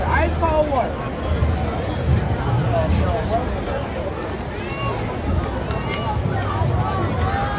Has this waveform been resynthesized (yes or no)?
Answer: no